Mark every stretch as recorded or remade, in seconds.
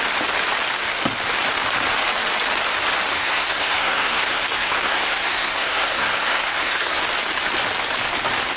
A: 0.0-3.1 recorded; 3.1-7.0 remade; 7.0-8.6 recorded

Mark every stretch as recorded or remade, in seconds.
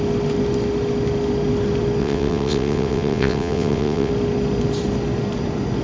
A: 0.0-2.0 recorded; 2.0-4.1 remade; 4.1-5.8 recorded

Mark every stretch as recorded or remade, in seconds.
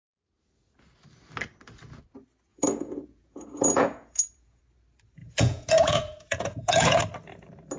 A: 0.0-2.5 recorded; 2.5-4.6 remade; 4.6-5.2 recorded; 5.2-7.0 remade; 7.0-7.8 recorded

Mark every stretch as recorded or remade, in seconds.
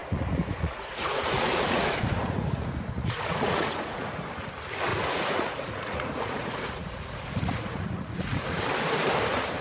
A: 0.0-4.2 remade; 4.2-4.9 recorded; 4.9-8.6 remade; 8.6-9.6 recorded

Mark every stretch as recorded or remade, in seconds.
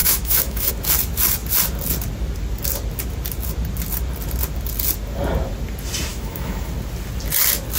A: 0.0-0.7 remade; 0.7-6.1 recorded; 6.1-6.7 remade; 6.7-7.8 recorded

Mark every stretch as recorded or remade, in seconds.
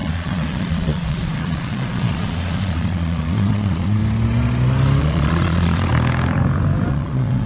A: 0.0-4.0 remade; 4.0-5.0 recorded; 5.0-5.9 remade; 5.9-6.9 recorded; 6.9-7.5 remade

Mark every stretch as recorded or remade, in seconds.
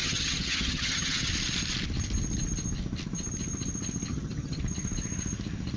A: 0.0-1.3 remade; 1.3-4.1 recorded; 4.1-4.6 remade; 4.6-5.8 recorded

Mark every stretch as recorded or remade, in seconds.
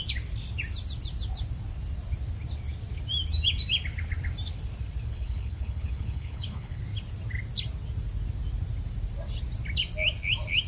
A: 0.0-5.1 recorded; 5.1-6.8 remade; 6.8-10.7 recorded